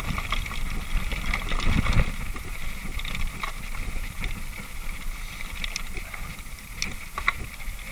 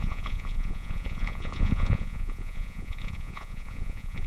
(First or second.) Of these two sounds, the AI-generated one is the second